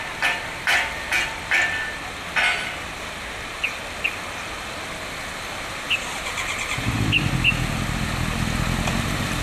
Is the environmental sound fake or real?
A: real